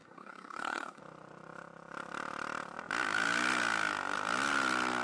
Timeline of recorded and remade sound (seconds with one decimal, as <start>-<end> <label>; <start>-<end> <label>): 0.0-1.0 remade; 1.0-5.0 recorded